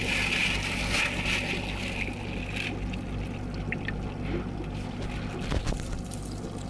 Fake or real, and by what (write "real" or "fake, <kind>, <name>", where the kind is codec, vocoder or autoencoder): real